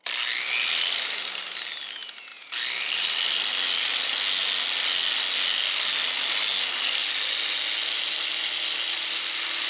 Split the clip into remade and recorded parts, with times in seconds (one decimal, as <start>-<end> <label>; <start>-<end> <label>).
0.0-9.7 recorded